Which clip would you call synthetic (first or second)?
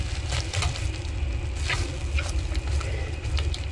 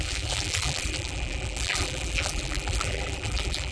second